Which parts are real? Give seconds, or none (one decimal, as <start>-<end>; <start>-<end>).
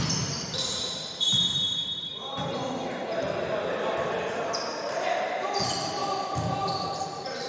1.3-4.3; 6.0-6.7